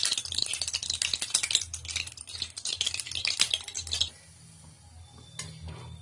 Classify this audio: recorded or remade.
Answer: recorded